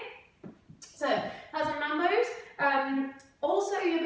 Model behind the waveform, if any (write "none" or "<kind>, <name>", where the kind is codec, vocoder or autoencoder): none